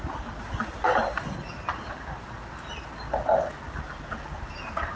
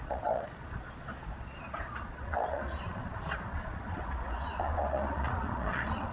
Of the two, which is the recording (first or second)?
first